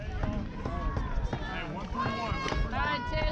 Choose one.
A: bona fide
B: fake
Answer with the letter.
A